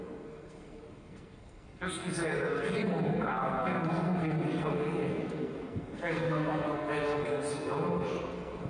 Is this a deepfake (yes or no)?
yes